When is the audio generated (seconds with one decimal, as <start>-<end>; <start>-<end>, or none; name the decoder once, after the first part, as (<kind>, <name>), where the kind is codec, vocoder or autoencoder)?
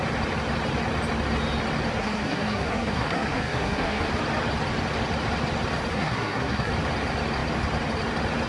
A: 2.0-4.1 (codec, SNAC); 5.9-6.7